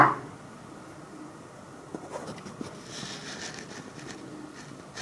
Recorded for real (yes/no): yes